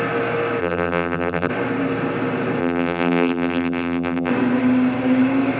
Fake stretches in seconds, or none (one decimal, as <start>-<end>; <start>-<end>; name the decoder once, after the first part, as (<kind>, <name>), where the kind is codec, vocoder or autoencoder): 0.6-1.5 (vocoder, BigVGAN v2); 2.6-4.3